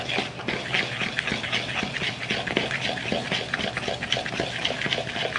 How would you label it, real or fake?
real